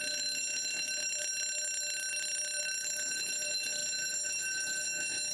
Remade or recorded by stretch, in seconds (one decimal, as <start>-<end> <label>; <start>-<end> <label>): 0.0-2.1 recorded; 2.1-2.6 remade; 2.6-5.3 recorded